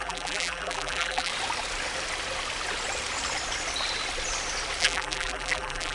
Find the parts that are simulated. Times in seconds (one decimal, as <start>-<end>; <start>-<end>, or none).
0.0-1.3; 4.8-5.9